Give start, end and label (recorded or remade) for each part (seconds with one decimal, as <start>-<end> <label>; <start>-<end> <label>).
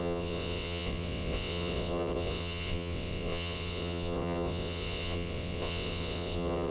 0.0-6.7 remade